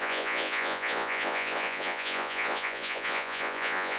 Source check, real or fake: fake